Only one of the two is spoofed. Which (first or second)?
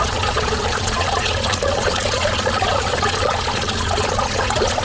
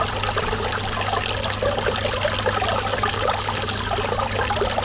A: first